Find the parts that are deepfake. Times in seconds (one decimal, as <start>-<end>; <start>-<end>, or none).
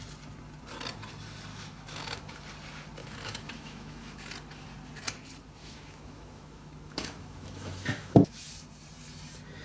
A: 1.5-2.4; 3.0-4.3; 5.6-8.5